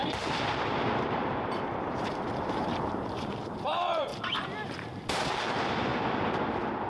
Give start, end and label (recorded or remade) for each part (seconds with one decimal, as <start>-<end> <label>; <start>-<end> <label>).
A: 0.0-4.1 remade; 4.1-5.1 recorded; 5.1-5.9 remade; 5.9-6.4 recorded; 6.4-6.9 remade